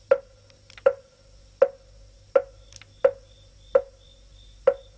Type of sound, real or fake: real